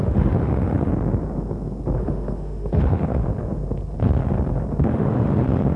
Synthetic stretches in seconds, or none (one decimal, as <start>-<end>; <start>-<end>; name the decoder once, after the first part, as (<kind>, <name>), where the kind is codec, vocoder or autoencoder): 0.0-0.9 (autoencoder, DAC-VAE); 2.0-3.3; 4.8-5.8